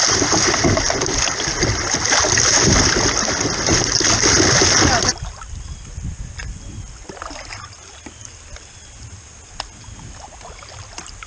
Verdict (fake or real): real